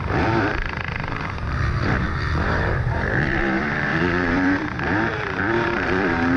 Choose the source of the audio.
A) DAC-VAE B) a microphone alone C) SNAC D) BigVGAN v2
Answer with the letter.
D